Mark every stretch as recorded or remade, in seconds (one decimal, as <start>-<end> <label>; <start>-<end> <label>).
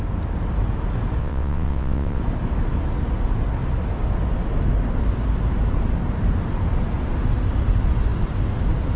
0.0-1.2 recorded; 1.2-2.2 remade; 2.2-9.0 recorded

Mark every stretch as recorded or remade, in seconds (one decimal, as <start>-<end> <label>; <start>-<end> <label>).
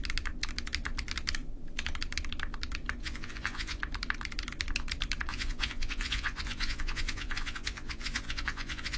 0.0-3.0 recorded; 3.0-3.8 remade; 3.8-5.3 recorded; 5.3-9.0 remade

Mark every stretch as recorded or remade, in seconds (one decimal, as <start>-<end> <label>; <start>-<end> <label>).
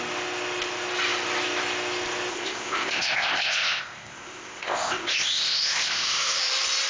0.0-2.3 recorded; 2.3-6.4 remade; 6.4-6.9 recorded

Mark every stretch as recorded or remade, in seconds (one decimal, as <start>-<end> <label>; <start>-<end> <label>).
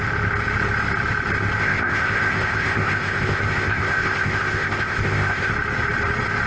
0.0-1.6 recorded; 1.6-5.5 remade; 5.5-6.5 recorded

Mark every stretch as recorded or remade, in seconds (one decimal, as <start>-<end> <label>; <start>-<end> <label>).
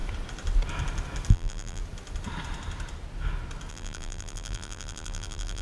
0.0-1.3 recorded; 1.3-1.8 remade; 1.8-3.7 recorded; 3.7-5.6 remade